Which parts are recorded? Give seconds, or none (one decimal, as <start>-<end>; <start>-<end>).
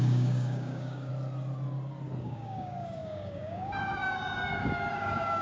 1.1-2.2